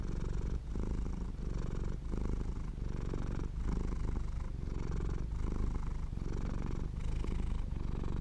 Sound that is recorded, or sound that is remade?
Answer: recorded